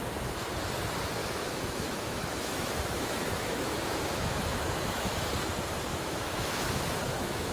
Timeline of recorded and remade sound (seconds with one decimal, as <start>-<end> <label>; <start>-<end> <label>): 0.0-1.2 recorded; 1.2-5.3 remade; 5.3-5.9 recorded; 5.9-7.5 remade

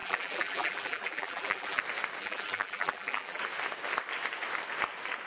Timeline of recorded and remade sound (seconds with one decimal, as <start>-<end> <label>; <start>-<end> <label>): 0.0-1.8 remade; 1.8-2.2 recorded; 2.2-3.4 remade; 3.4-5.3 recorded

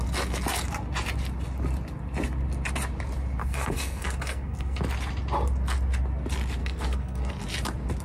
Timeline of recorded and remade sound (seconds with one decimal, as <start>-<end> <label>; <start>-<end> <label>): 0.0-3.4 recorded; 3.4-4.8 remade; 4.8-6.6 recorded; 6.6-7.3 remade; 7.3-8.0 recorded

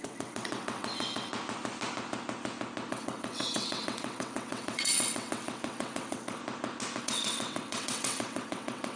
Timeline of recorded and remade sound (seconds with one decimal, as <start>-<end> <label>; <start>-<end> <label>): 0.0-1.3 remade; 1.3-2.9 recorded; 2.9-6.4 remade; 6.4-7.0 recorded; 7.0-9.0 remade

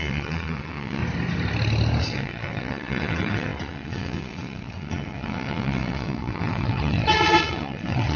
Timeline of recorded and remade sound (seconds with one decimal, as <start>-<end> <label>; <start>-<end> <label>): 0.0-1.0 remade; 1.0-2.0 recorded; 2.0-8.2 remade

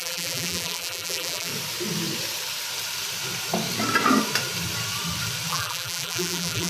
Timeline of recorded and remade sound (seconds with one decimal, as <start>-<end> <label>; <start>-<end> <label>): 0.0-1.5 remade; 1.5-5.5 recorded; 5.5-6.7 remade